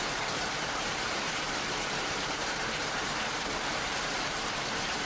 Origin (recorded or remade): remade